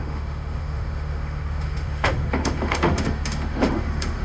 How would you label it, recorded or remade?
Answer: remade